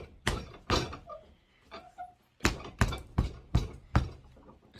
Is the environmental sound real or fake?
real